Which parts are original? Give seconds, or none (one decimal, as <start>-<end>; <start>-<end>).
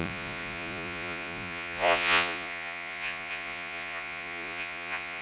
none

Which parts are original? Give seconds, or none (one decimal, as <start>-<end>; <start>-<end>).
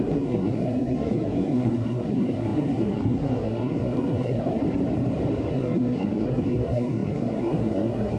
4.6-5.5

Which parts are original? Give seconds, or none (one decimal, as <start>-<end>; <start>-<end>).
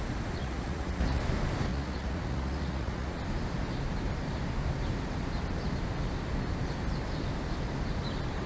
0.0-0.4; 1.2-1.7; 3.2-8.5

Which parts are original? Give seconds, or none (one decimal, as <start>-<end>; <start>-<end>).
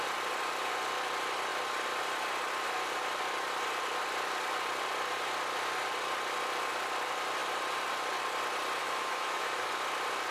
0.0-8.8; 9.7-10.3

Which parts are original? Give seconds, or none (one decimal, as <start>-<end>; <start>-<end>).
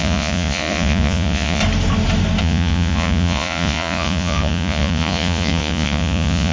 1.6-2.4